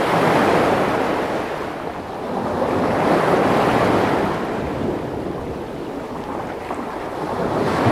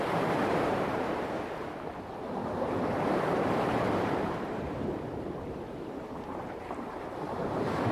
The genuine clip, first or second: first